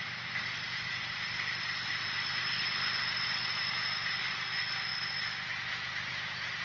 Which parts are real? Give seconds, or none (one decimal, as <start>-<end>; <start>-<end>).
0.0-6.6